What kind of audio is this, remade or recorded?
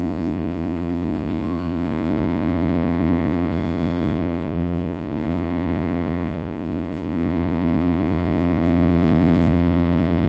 remade